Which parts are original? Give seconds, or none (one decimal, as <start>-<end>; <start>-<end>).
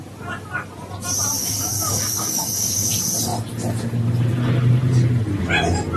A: 0.0-1.4; 2.9-6.0